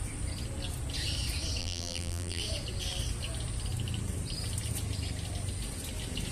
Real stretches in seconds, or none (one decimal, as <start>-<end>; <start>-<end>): 0.0-1.6; 2.4-6.3